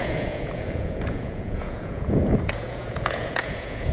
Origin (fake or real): fake